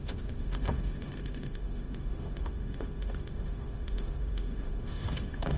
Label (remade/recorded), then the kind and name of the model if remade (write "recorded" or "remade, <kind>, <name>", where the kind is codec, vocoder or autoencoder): remade, autoencoder, DAC-VAE